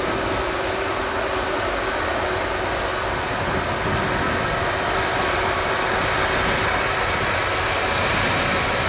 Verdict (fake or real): real